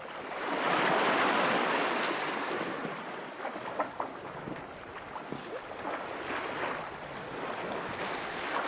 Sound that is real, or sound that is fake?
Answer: real